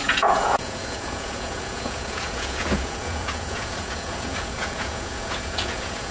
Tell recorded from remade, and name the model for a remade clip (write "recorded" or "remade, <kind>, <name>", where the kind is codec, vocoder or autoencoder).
remade, vocoder, Vocos